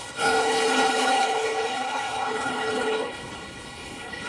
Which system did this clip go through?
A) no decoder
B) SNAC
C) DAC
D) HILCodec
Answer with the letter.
D